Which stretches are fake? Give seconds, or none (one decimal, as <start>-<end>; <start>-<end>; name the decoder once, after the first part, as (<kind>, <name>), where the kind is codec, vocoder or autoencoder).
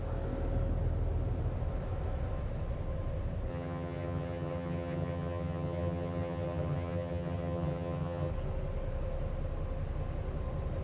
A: 3.5-8.3 (vocoder, HiFi-GAN)